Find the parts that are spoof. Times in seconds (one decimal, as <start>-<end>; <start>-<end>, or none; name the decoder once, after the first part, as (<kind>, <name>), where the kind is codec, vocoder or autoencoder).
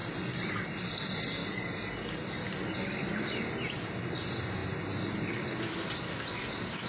none